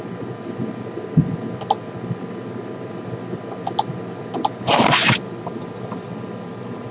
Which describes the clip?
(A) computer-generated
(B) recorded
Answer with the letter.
B